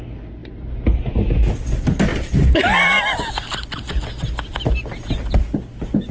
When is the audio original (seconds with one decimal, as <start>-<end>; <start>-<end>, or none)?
0.0-0.4; 1.0-2.1; 4.0-6.1